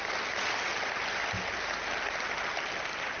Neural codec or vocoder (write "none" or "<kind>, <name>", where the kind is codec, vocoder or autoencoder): none